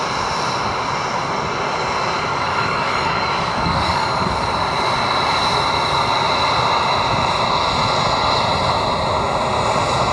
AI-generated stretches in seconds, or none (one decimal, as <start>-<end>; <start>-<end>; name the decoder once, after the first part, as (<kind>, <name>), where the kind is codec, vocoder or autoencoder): 2.3-4.5 (codec, DAC)